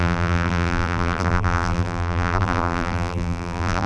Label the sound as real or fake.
fake